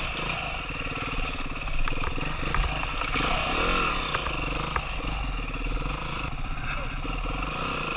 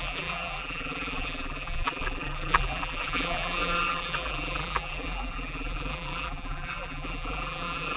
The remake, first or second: second